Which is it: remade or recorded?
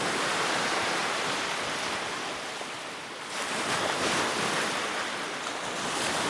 remade